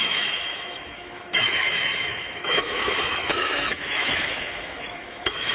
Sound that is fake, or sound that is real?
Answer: fake